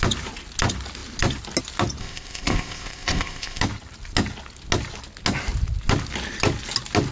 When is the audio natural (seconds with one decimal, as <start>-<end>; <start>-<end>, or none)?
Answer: 0.0-2.0; 3.6-7.1